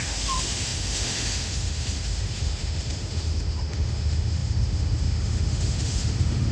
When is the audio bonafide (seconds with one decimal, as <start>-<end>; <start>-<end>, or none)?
none